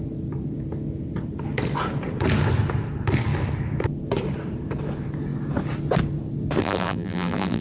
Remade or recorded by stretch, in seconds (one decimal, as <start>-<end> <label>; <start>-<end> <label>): 0.0-6.6 recorded; 6.6-7.6 remade